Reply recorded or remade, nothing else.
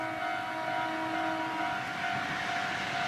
recorded